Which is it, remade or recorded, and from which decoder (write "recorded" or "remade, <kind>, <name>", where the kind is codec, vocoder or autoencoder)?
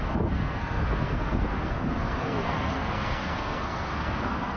remade, codec, SNAC